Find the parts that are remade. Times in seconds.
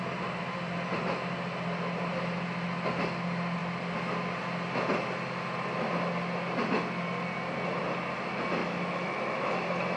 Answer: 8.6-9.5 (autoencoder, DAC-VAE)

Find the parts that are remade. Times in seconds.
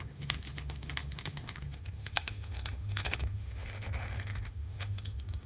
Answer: 0.0-5.5 (autoencoder, DAC-VAE)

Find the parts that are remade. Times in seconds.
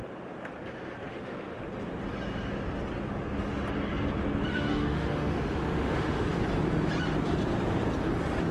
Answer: 1.1-1.6 (autoencoder, DAC-VAE); 4.5-6.4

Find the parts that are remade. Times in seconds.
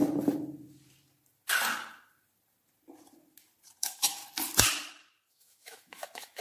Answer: 3.8-4.2 (autoencoder, DAC-VAE); 5.3-6.4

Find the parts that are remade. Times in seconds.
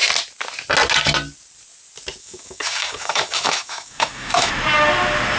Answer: 2.2-4.5 (autoencoder, DAC-VAE)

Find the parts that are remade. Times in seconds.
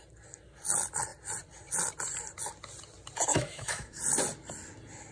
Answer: 3.3-4.0 (autoencoder, DAC-VAE)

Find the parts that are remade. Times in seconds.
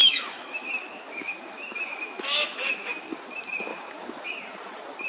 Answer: 0.0-3.1 (autoencoder, DAC-VAE); 3.7-4.3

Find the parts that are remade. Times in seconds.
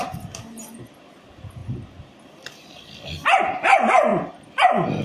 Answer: none